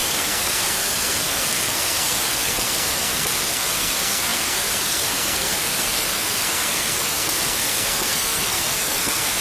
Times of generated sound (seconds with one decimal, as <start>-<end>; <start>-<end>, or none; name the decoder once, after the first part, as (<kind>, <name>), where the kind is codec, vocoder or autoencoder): 0.0-9.4 (codec, SNAC)